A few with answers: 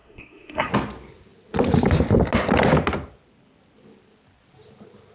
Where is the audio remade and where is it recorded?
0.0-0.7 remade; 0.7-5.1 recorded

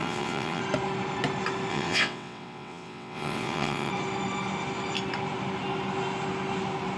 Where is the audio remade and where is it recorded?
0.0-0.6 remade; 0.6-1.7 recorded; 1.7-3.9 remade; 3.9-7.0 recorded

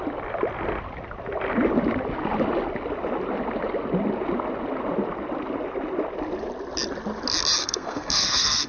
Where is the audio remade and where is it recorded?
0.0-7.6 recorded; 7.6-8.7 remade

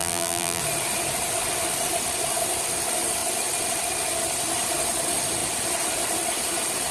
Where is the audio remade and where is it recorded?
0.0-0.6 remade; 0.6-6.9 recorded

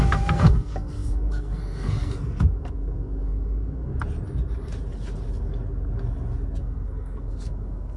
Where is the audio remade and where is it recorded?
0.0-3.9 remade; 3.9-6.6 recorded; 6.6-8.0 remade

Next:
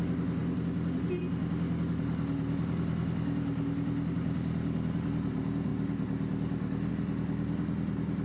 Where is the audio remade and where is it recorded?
0.0-8.2 recorded